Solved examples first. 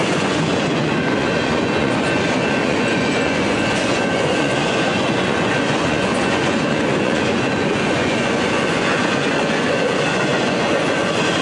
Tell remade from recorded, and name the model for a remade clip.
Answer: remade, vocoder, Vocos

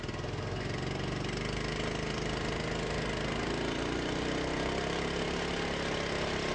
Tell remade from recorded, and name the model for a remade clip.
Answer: recorded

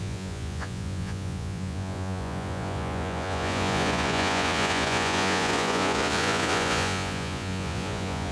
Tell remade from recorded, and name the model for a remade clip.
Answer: remade, vocoder, Vocos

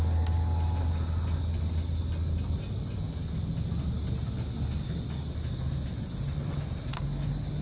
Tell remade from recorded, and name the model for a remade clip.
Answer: recorded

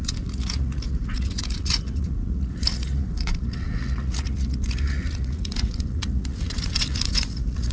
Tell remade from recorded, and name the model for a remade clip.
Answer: remade, vocoder, Vocos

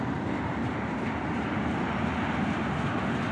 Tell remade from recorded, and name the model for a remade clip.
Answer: recorded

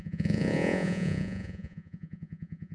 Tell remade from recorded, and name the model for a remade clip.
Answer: remade, vocoder, Vocos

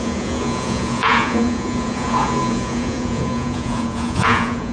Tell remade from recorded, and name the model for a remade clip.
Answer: remade, vocoder, Vocos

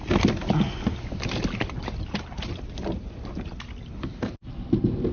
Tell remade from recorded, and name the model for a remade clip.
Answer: recorded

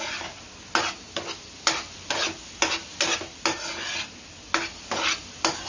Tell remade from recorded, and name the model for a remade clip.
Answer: recorded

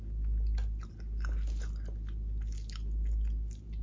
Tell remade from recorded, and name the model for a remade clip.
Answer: recorded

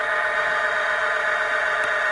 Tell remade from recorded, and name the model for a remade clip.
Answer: recorded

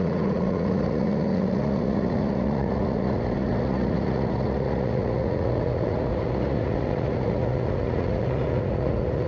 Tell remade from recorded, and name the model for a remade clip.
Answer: remade, vocoder, Vocos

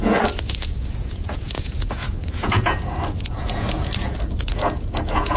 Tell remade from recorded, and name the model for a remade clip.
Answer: remade, vocoder, Vocos